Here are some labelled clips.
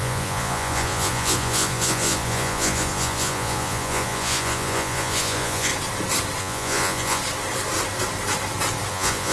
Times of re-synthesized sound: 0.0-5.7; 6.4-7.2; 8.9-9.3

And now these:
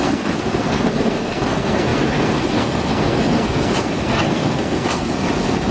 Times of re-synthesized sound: 0.0-5.7

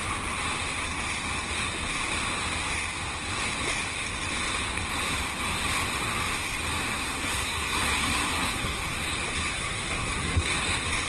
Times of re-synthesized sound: 6.8-8.8; 9.5-10.5

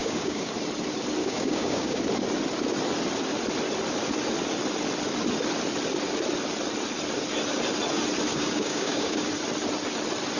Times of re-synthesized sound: 0.0-0.5; 1.2-2.0; 8.3-9.3